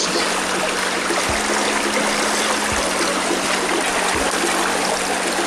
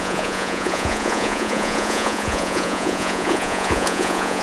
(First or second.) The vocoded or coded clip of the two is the second